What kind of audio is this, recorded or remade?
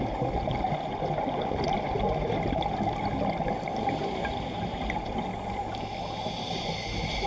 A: recorded